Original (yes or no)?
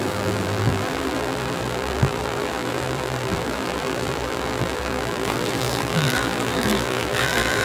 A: no